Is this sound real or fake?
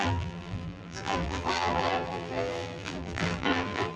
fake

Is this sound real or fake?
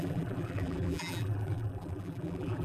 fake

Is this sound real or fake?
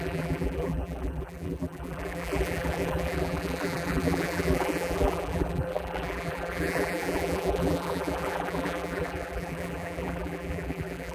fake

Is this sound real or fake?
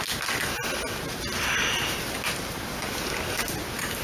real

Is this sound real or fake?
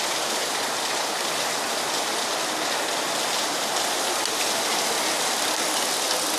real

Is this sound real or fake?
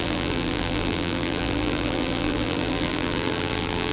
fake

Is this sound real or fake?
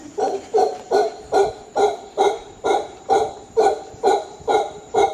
fake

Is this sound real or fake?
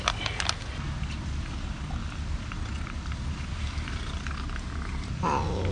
real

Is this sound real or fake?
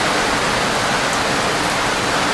real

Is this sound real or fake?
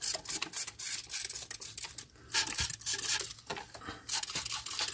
real